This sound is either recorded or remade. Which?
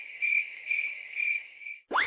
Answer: remade